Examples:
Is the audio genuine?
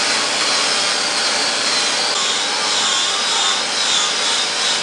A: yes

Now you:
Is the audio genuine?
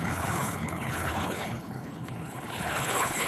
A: no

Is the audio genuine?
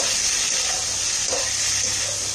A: yes